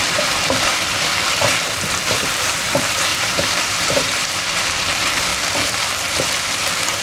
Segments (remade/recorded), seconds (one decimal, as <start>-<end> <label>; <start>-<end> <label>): 0.0-1.1 remade; 1.1-2.1 recorded; 2.1-5.3 remade; 5.3-6.4 recorded; 6.4-7.0 remade